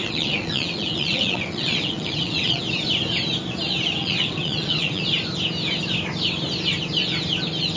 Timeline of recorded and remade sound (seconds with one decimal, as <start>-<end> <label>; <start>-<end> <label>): 0.0-2.6 remade; 2.6-4.0 recorded; 4.0-5.0 remade; 5.0-7.8 recorded